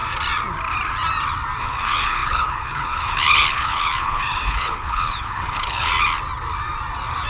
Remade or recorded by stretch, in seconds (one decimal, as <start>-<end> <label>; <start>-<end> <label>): 0.0-1.6 recorded; 1.6-5.9 remade; 5.9-7.3 recorded